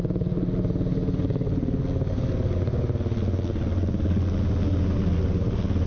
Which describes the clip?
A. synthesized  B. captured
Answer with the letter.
B